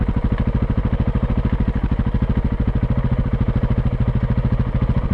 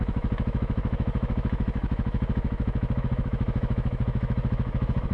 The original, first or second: first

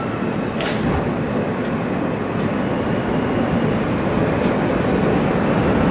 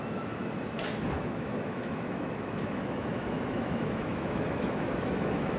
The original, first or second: first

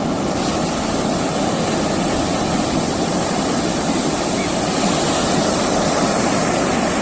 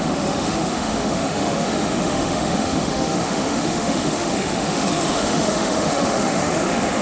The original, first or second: first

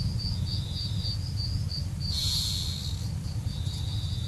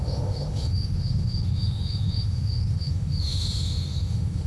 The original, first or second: first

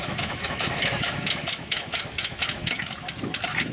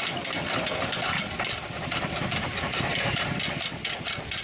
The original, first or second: second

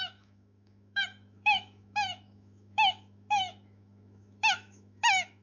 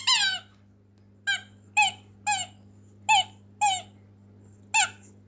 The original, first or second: second